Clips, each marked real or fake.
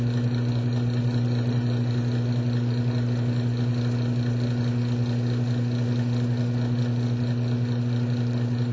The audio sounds real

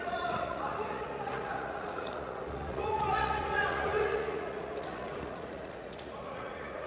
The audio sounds fake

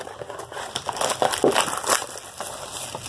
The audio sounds real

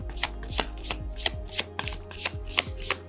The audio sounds real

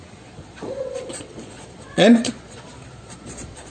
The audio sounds fake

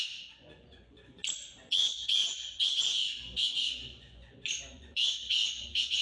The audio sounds fake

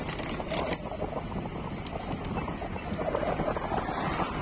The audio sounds real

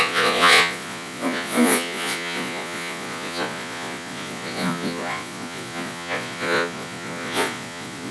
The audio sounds fake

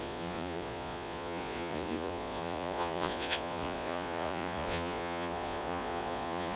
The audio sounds fake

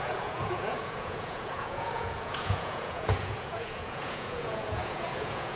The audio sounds fake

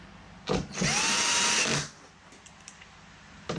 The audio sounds real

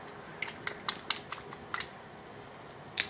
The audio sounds real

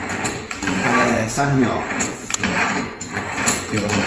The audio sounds fake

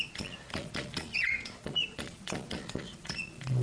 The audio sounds fake